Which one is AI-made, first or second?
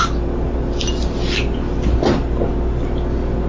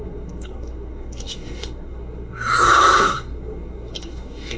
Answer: second